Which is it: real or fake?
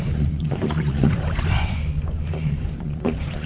fake